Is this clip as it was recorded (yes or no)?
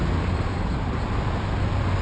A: yes